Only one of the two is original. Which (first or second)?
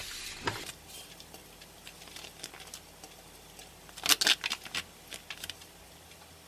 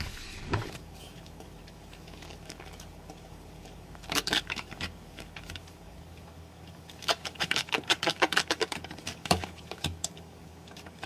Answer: first